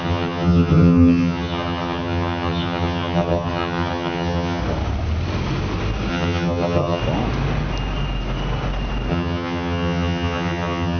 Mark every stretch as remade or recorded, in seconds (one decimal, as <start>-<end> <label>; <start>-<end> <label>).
0.0-4.6 remade; 4.6-6.1 recorded; 6.1-7.0 remade; 7.0-9.1 recorded; 9.1-11.0 remade